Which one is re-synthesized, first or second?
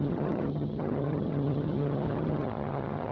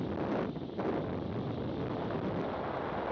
first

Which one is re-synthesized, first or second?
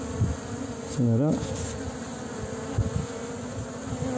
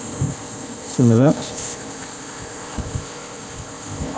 second